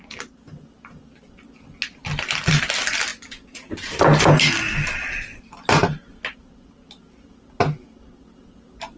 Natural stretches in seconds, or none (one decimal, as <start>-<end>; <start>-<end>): 0.0-9.0